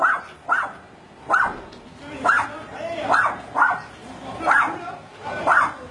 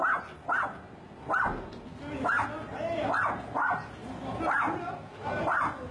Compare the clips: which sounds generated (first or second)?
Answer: first